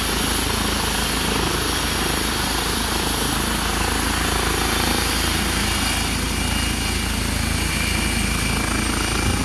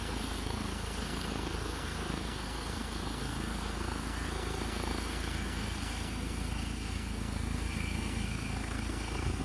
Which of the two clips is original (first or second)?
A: first